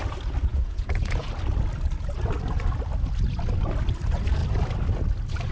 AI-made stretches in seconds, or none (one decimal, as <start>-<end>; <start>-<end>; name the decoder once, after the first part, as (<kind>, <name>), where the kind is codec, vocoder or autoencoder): 0.5-1.3 (vocoder, Vocos)